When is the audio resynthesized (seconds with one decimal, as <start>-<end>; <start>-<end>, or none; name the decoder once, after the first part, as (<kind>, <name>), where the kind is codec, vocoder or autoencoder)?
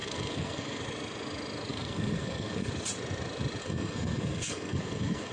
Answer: 0.0-0.8 (codec, SNAC); 1.7-2.7; 3.6-5.3